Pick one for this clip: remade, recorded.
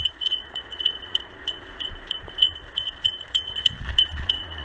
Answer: remade